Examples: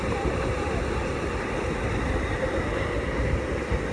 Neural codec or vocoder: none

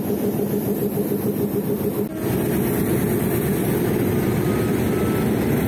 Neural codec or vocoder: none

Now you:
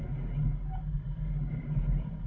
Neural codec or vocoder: none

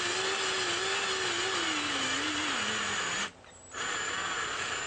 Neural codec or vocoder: none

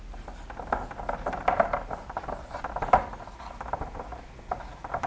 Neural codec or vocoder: none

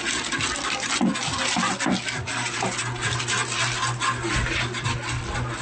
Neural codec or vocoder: none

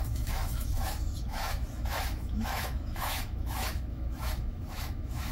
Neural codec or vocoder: autoencoder, DAC-VAE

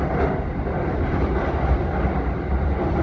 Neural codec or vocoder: vocoder, BigVGAN v2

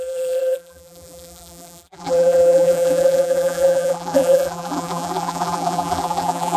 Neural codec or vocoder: vocoder, BigVGAN v2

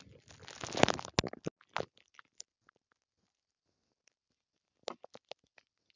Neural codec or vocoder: none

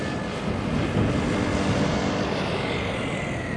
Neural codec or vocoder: none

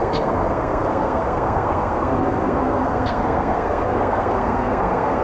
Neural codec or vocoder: codec, SNAC